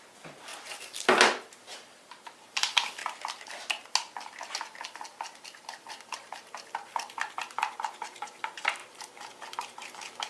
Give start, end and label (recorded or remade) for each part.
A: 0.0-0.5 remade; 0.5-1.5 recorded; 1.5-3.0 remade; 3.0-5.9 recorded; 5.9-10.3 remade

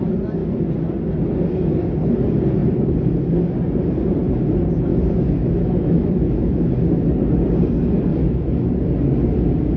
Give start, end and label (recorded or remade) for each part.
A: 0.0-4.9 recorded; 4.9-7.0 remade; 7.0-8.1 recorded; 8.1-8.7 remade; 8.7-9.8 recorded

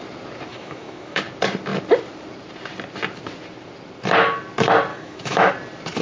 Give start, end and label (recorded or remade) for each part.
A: 0.0-0.5 recorded; 0.5-1.2 remade; 1.2-4.9 recorded; 4.9-5.5 remade; 5.5-6.0 recorded

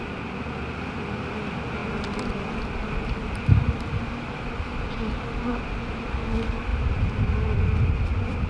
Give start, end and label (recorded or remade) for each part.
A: 0.0-8.5 recorded

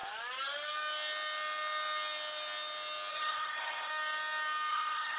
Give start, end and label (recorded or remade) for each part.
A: 0.0-3.1 recorded; 3.1-3.9 remade; 3.9-4.7 recorded; 4.7-5.2 remade

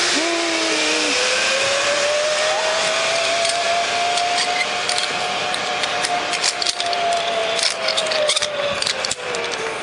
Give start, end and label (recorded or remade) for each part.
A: 0.0-7.4 recorded; 7.4-8.4 remade; 8.4-9.8 recorded